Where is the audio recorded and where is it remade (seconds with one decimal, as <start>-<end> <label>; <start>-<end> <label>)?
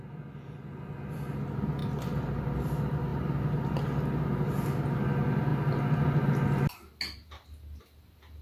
0.0-1.8 recorded; 1.8-2.4 remade; 2.4-3.1 recorded; 3.1-3.7 remade; 3.7-8.4 recorded